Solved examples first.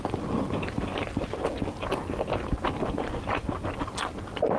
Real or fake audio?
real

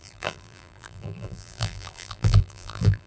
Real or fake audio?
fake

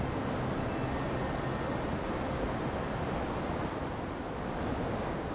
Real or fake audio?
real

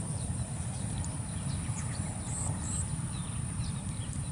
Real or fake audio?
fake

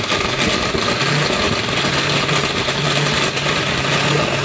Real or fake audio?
real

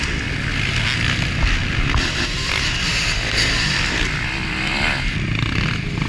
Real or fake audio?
real